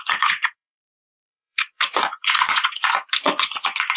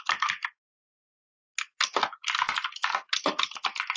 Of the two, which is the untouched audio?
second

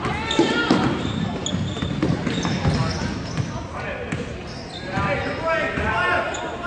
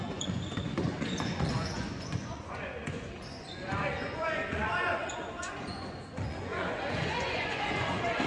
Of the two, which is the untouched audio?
first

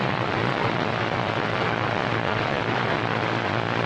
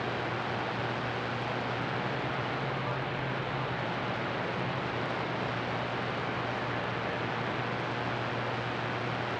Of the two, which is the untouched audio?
second